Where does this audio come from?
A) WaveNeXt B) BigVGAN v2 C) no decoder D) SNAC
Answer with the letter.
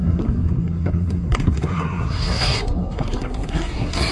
D